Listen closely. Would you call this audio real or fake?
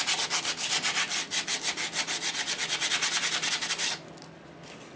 real